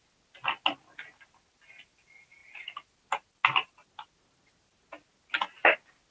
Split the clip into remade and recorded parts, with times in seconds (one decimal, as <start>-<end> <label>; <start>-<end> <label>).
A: 0.0-6.1 recorded